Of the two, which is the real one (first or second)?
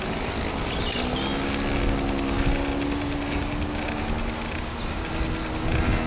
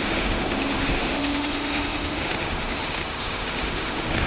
first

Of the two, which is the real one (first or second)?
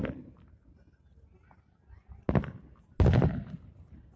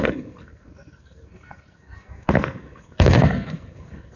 first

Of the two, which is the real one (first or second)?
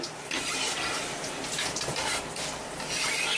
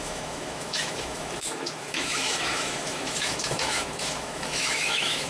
first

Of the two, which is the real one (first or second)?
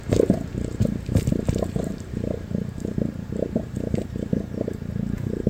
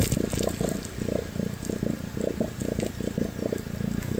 second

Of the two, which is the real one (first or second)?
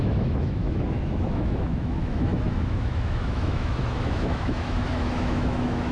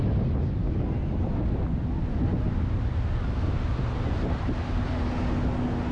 second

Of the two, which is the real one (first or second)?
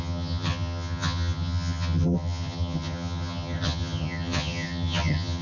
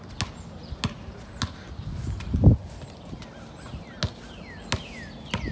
second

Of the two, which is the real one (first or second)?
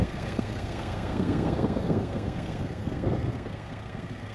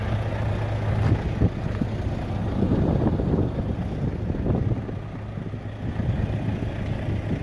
second